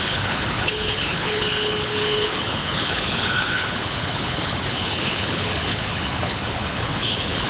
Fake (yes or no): yes